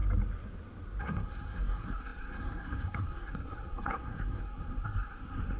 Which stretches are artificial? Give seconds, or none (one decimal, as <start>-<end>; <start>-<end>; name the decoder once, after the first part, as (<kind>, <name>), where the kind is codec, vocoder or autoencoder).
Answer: 1.0-5.6 (codec, SNAC)